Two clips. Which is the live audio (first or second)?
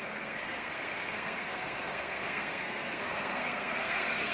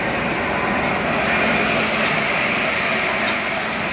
second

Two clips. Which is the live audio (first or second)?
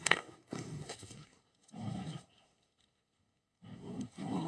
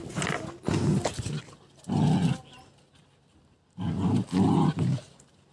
second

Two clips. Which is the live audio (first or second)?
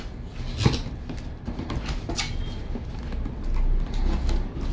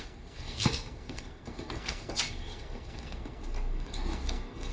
first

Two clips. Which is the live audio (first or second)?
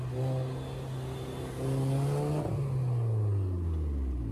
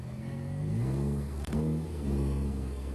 first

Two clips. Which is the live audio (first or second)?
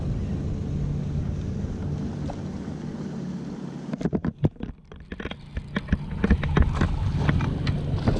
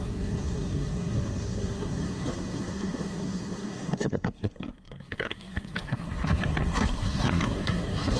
first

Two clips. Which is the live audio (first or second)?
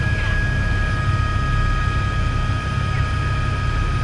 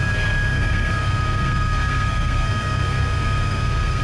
first